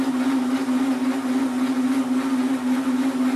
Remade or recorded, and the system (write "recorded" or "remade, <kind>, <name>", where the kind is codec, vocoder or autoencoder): recorded